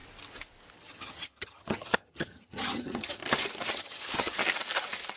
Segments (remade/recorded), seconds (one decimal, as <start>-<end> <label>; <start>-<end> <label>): 0.0-0.7 recorded; 0.7-3.2 remade; 3.2-3.7 recorded; 3.7-4.4 remade; 4.4-5.2 recorded